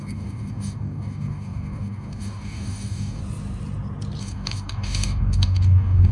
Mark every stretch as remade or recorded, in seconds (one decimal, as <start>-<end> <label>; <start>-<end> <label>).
0.0-3.2 remade; 3.2-4.2 recorded; 4.2-6.1 remade